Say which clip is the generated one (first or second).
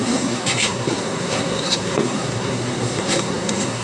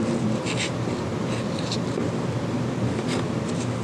first